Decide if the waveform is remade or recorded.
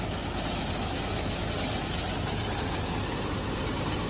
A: recorded